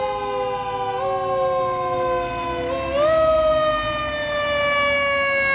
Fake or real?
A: real